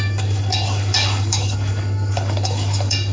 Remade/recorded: remade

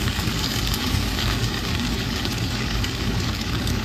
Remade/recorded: remade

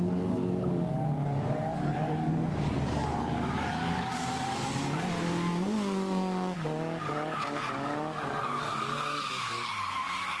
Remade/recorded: remade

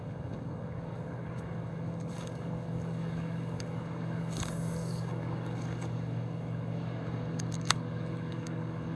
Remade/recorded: remade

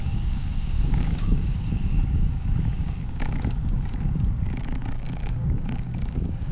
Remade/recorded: remade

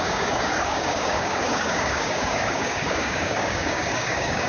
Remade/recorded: remade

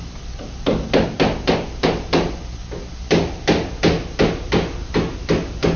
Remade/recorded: recorded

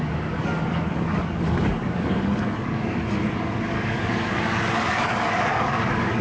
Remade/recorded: remade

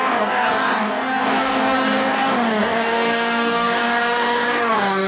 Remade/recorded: remade